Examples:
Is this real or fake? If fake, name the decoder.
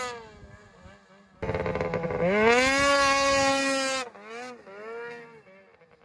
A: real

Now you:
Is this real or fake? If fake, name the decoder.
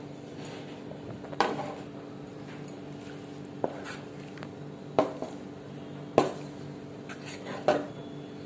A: real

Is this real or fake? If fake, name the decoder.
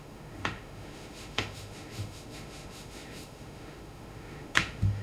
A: fake, autoencoder, DAC-VAE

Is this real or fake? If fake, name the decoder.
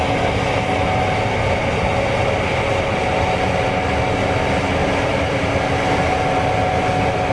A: real